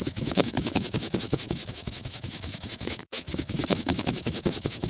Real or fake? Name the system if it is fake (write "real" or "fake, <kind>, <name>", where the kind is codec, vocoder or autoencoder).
fake, autoencoder, DAC-VAE